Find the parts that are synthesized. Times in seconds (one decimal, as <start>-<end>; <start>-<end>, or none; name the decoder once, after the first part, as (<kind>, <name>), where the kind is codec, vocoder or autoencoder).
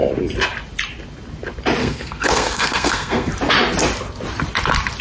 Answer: 1.8-3.3 (codec, SNAC)